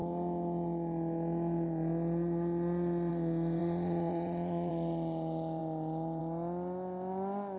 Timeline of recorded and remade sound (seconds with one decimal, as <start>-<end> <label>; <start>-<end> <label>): 0.0-3.6 recorded; 3.6-4.7 remade; 4.7-7.6 recorded